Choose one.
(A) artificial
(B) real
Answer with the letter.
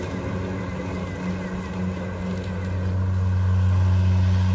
B